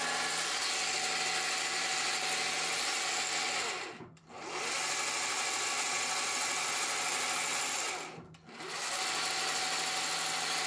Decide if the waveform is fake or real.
real